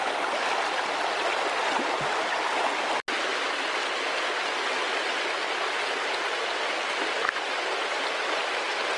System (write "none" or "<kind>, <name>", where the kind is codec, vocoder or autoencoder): none